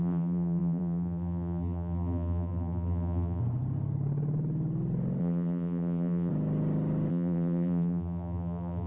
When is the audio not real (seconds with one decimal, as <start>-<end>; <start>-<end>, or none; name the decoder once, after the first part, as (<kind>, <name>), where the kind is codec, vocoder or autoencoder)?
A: 0.0-3.4 (vocoder, BigVGAN v2); 5.2-6.3; 7.1-8.9